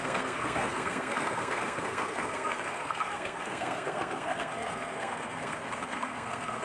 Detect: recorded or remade remade